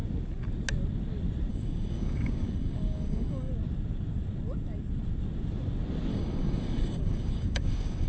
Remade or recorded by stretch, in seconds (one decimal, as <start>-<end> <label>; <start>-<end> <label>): 0.0-1.5 recorded; 1.5-3.5 remade; 3.5-6.1 recorded; 6.1-8.1 remade

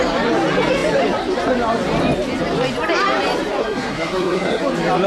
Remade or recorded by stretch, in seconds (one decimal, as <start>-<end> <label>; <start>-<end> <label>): 0.0-3.6 recorded; 3.6-4.6 remade; 4.6-5.1 recorded

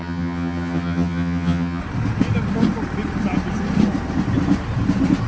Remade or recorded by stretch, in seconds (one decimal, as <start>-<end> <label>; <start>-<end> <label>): 0.0-1.8 remade; 1.8-5.3 recorded